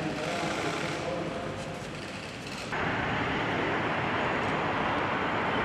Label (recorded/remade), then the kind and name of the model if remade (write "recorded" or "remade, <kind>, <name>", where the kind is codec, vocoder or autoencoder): recorded